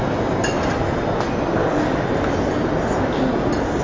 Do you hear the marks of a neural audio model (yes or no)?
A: no